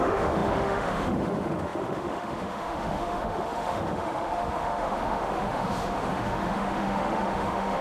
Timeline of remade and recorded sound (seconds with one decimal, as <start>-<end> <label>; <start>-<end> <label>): 0.0-7.8 remade

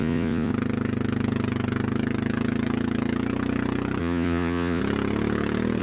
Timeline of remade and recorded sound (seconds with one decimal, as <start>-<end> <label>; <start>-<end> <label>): 0.0-0.5 remade; 0.5-4.0 recorded; 4.0-4.8 remade; 4.8-5.8 recorded

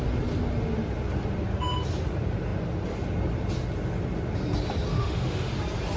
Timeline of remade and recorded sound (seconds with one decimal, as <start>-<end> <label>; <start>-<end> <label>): 0.0-4.9 recorded; 4.9-5.5 remade; 5.5-6.0 recorded

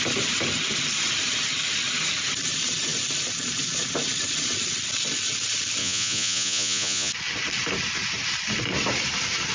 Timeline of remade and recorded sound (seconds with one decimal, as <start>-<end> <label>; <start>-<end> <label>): 0.0-5.8 recorded; 5.8-7.1 remade; 7.1-9.5 recorded

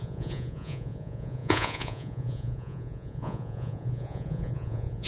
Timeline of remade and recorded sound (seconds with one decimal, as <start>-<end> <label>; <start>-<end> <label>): 0.0-5.1 remade